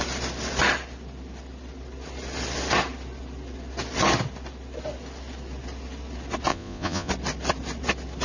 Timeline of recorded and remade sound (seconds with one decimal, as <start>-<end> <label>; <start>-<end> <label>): 0.0-6.5 recorded; 6.5-7.1 remade; 7.1-8.2 recorded